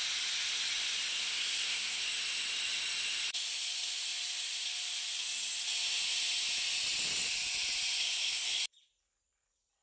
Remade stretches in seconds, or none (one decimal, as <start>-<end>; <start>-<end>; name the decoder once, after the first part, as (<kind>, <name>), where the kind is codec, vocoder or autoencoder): 1.2-2.0 (codec, SNAC); 8.0-8.6